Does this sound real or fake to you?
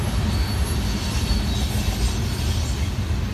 real